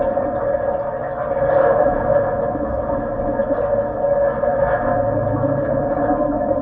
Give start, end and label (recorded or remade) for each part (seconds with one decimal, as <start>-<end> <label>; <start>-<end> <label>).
0.0-6.6 recorded